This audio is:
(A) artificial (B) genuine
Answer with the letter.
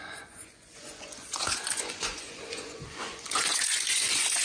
A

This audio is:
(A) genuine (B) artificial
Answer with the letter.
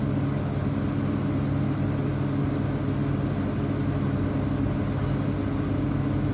A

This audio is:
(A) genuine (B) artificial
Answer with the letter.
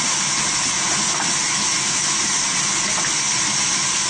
A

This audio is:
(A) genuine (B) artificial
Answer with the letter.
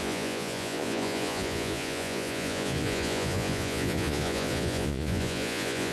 B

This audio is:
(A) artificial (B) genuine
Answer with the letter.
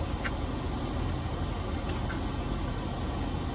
B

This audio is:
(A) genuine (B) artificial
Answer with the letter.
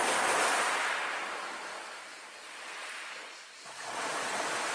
A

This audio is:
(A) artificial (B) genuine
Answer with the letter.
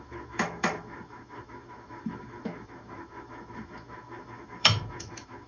A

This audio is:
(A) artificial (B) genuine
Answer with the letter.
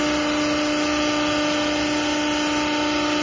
B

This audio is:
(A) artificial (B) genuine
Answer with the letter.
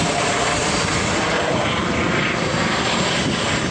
B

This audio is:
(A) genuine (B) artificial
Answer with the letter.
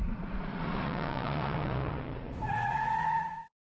B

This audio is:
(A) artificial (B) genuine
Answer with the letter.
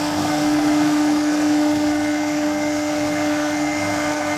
A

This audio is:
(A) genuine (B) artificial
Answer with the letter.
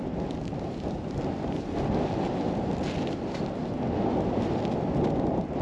A